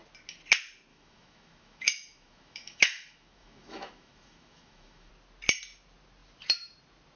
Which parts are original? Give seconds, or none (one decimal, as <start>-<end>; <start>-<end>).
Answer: 0.0-0.9; 5.1-7.2